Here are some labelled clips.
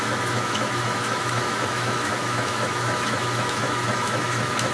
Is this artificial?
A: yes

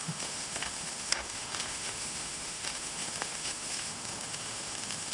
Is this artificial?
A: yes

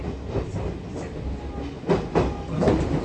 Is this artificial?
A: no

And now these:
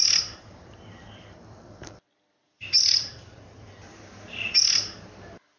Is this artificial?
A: yes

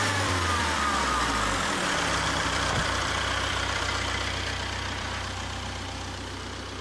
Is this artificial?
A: yes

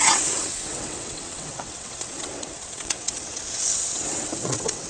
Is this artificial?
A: yes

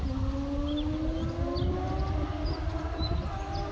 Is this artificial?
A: no